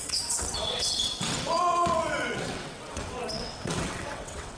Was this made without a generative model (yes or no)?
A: no